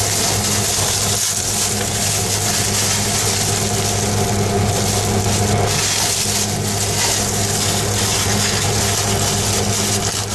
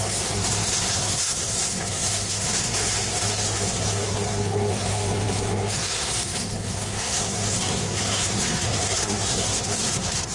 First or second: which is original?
first